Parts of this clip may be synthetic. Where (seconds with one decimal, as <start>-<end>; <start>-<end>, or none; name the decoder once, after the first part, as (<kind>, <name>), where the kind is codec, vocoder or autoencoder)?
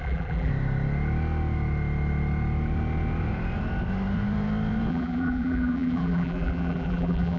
0.0-0.5 (vocoder, BigVGAN v2); 4.9-7.4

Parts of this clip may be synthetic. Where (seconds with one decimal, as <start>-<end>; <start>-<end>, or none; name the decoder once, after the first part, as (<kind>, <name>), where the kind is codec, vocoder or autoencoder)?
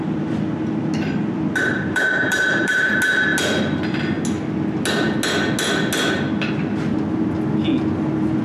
1.7-2.9 (vocoder, BigVGAN v2)